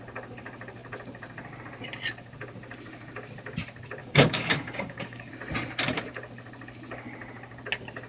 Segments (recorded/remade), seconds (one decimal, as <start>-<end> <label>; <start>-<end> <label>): 0.0-4.0 recorded; 4.0-5.3 remade; 5.3-8.1 recorded